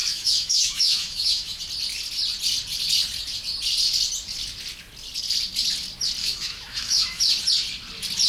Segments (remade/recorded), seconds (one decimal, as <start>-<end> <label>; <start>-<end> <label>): 0.0-1.6 remade; 1.6-6.2 recorded; 6.2-7.2 remade; 7.2-8.3 recorded